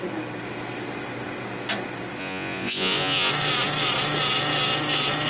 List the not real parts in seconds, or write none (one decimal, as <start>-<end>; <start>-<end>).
2.2-3.3